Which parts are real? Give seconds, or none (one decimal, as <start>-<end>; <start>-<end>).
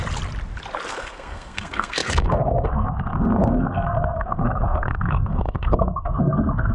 0.0-0.9